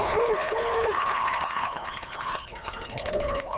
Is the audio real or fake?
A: fake